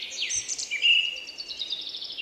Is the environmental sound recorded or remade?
recorded